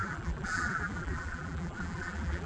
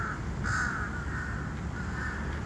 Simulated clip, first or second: first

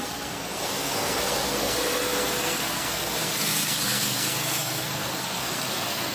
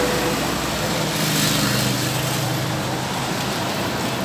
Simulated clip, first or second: first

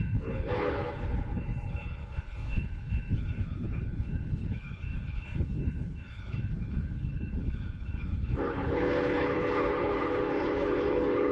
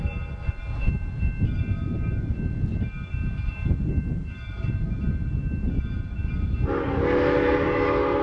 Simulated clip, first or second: first